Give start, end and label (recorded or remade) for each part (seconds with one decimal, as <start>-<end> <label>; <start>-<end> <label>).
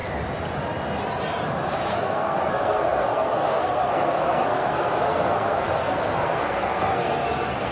0.0-1.9 recorded; 1.9-7.7 remade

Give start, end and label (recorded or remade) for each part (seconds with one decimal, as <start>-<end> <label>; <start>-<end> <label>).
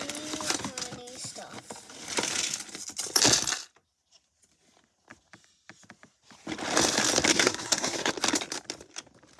0.0-7.3 recorded; 7.3-8.1 remade; 8.1-9.4 recorded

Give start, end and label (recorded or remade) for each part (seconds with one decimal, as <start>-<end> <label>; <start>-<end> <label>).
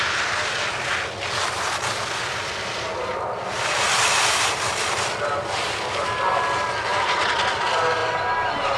0.0-8.8 recorded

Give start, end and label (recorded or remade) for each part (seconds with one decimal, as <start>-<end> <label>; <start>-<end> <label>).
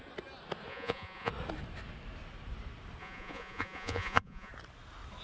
0.0-0.7 recorded; 0.7-1.3 remade; 1.3-3.0 recorded; 3.0-4.5 remade; 4.5-5.2 recorded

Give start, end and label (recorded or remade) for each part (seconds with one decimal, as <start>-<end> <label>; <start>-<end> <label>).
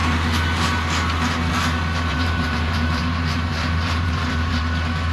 0.0-2.1 recorded; 2.1-3.0 remade; 3.0-3.5 recorded; 3.5-4.6 remade; 4.6-5.1 recorded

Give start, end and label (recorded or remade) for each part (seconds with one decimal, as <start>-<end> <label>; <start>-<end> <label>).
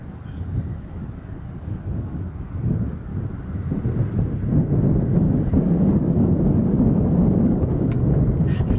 0.0-3.1 remade; 3.1-5.4 recorded; 5.4-8.8 remade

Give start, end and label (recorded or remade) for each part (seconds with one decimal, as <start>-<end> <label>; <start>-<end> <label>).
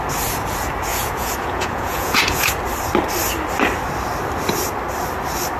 0.0-0.9 recorded; 0.9-2.5 remade; 2.5-5.6 recorded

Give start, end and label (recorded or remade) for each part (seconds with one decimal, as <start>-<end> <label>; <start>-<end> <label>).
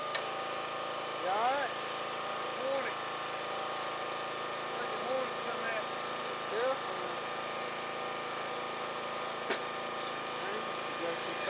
0.0-11.5 recorded